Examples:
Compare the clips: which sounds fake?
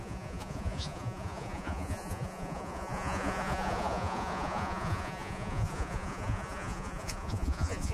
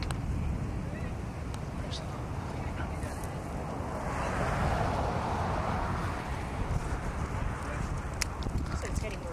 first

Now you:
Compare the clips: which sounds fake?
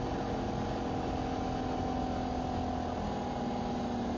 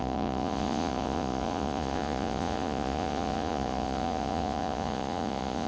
second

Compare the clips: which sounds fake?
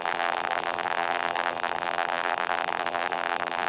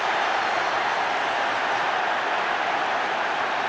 first